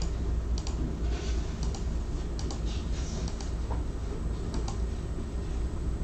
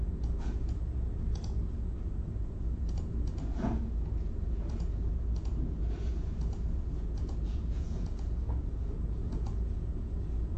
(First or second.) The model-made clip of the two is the second